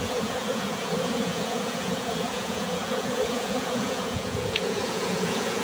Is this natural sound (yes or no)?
no